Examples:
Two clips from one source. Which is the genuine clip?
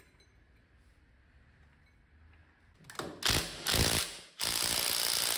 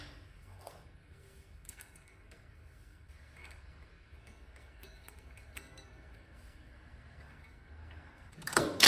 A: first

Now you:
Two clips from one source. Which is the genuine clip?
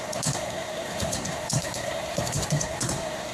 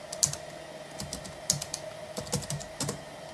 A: second